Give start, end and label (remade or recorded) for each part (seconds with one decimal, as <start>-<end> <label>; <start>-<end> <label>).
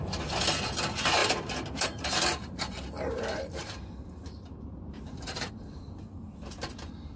0.0-1.2 recorded; 1.2-5.5 remade; 5.5-7.2 recorded